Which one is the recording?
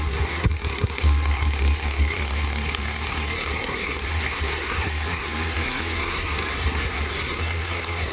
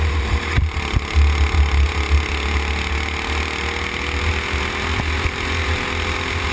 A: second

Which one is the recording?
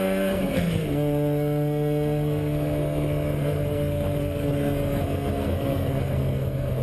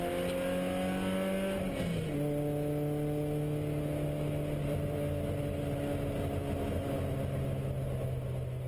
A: second